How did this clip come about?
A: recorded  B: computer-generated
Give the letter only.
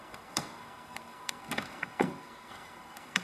B